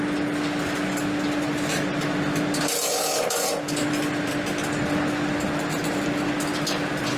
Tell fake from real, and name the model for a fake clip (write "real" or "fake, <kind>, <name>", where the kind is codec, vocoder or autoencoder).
real